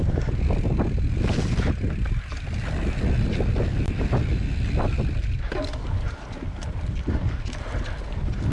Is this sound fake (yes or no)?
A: no